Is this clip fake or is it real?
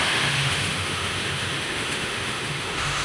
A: fake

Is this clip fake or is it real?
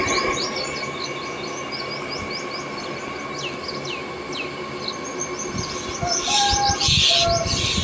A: real